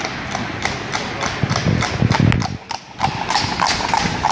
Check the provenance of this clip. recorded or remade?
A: recorded